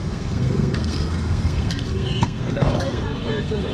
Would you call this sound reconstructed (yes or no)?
yes